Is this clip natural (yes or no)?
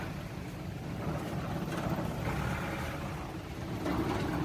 yes